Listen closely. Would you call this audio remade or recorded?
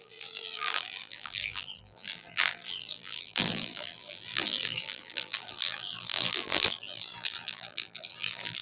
remade